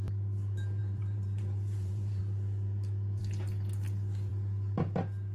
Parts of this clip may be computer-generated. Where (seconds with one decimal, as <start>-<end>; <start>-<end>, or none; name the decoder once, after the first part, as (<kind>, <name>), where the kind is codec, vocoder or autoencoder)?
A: 0.8-2.2 (vocoder, BigVGAN v2)